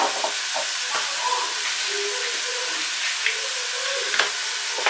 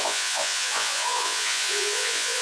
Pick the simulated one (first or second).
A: second